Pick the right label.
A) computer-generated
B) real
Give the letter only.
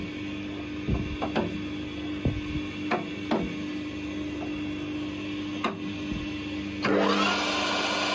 B